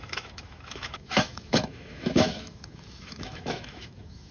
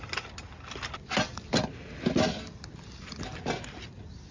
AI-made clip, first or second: first